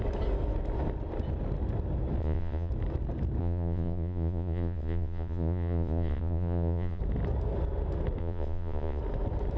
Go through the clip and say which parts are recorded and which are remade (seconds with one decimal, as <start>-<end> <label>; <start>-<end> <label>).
0.0-2.2 recorded; 2.2-2.7 remade; 2.7-3.4 recorded; 3.4-7.0 remade; 7.0-8.2 recorded; 8.2-9.0 remade; 9.0-9.6 recorded